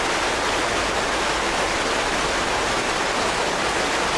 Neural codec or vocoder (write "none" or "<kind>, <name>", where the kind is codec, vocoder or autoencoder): none